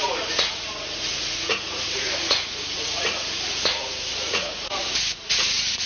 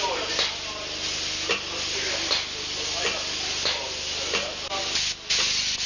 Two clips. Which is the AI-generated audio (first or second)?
first